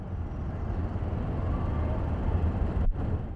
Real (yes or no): yes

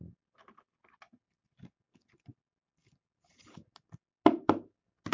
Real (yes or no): yes